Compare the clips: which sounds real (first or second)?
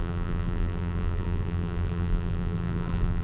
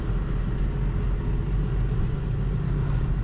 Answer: second